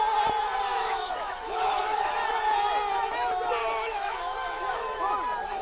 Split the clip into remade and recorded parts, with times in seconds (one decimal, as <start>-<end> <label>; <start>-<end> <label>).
0.0-0.7 recorded; 0.7-2.1 remade; 2.1-3.6 recorded; 3.6-5.0 remade; 5.0-5.6 recorded